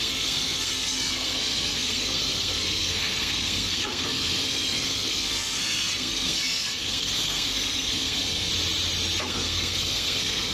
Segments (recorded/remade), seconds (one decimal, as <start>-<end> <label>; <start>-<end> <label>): 0.0-8.5 remade; 8.5-9.2 recorded; 9.2-10.5 remade